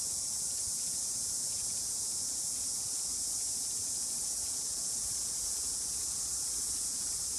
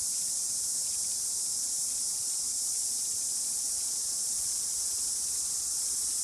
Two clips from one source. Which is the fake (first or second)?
first